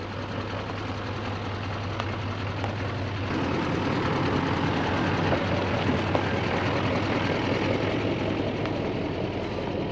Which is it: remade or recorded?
recorded